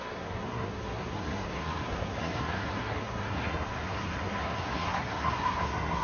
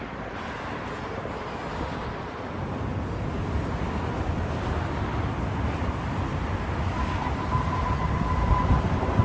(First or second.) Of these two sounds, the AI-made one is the first